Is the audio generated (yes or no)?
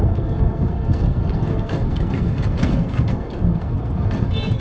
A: yes